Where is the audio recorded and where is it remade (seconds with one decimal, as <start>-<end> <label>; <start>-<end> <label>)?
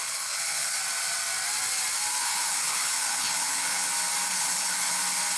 0.0-0.8 remade; 0.8-2.2 recorded; 2.2-3.9 remade; 3.9-4.3 recorded; 4.3-5.0 remade; 5.0-5.4 recorded